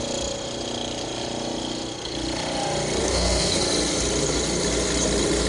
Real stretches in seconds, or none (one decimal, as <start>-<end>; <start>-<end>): 0.0-3.0; 3.6-5.5